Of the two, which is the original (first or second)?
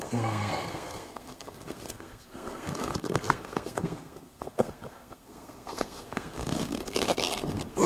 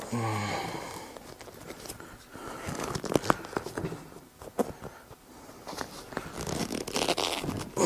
second